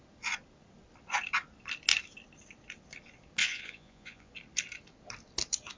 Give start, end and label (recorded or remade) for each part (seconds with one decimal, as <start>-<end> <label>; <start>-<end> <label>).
0.0-3.4 recorded; 3.4-4.3 remade; 4.3-5.8 recorded